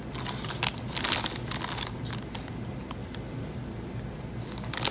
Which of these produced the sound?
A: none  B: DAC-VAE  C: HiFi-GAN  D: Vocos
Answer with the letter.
A